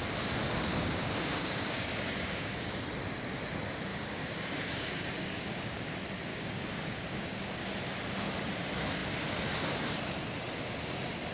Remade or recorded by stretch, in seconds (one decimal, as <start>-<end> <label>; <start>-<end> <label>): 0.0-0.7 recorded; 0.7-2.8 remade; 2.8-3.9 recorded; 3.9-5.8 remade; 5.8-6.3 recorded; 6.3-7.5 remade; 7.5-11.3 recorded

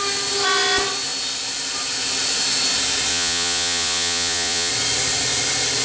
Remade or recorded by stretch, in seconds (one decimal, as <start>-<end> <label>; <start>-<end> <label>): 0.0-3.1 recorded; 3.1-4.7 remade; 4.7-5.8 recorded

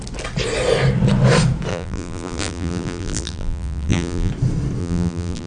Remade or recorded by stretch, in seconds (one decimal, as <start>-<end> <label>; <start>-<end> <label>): 0.0-1.7 recorded; 1.7-4.3 remade; 4.3-4.8 recorded; 4.8-5.5 remade